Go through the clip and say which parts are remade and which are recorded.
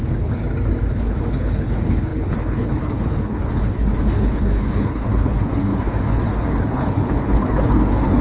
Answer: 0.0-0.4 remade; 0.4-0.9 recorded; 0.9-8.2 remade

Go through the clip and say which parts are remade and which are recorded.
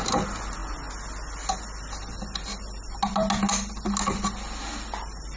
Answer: 0.0-5.4 recorded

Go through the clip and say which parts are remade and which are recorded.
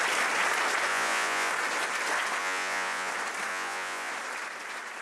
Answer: 0.0-0.9 recorded; 0.9-1.5 remade; 1.5-2.4 recorded; 2.4-3.1 remade; 3.1-3.5 recorded; 3.5-4.1 remade; 4.1-5.0 recorded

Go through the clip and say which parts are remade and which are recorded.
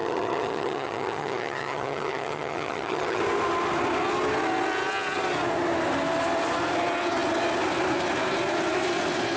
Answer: 0.0-3.2 remade; 3.2-9.4 recorded